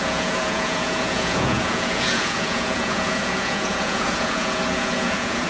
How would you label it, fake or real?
fake